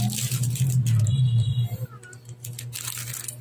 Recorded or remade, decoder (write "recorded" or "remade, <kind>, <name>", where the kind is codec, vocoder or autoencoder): recorded